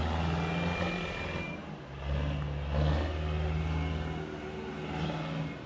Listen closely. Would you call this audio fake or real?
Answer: real